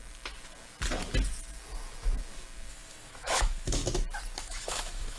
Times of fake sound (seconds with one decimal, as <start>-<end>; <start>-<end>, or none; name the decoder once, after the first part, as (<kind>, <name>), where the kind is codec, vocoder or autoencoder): 2.7-3.8 (autoencoder, DAC-VAE); 4.4-5.2